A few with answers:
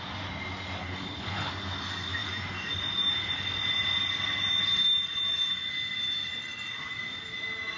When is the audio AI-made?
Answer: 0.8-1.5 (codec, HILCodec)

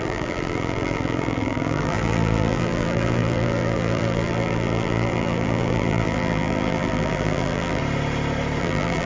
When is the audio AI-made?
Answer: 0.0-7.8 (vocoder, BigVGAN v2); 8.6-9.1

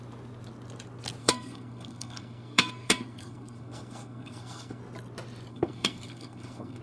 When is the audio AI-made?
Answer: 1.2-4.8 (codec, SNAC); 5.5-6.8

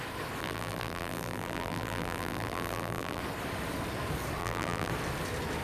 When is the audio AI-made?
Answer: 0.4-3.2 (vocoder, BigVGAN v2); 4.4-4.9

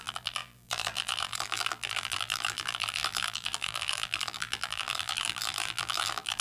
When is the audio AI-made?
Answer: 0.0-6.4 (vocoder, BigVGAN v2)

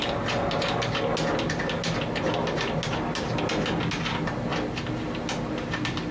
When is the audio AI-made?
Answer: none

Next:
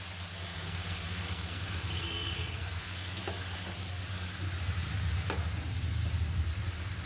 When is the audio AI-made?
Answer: 0.5-3.2 (codec, SNAC)

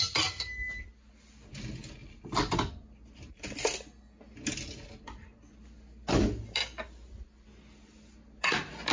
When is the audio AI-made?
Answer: none